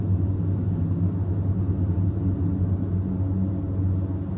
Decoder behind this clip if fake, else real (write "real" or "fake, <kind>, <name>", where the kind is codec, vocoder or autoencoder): real